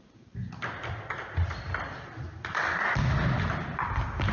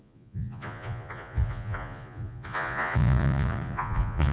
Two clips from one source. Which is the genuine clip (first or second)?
first